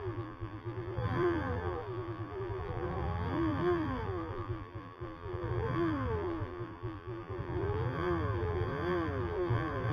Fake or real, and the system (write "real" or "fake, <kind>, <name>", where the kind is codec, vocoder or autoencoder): fake, vocoder, BigVGAN v2